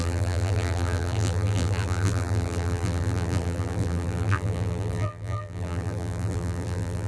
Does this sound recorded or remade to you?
remade